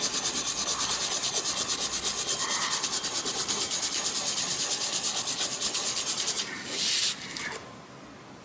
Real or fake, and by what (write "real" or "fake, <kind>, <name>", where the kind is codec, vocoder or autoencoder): real